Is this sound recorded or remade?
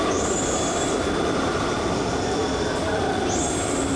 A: remade